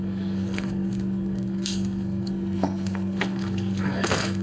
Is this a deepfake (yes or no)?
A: yes